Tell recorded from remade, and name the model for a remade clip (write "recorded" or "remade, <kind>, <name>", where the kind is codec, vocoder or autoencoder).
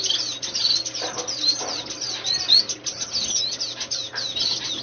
recorded